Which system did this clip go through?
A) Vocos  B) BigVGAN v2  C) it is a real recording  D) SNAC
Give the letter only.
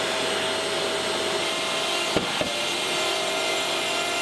C